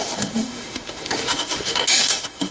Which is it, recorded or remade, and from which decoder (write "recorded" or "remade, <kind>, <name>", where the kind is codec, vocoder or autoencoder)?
remade, autoencoder, DAC-VAE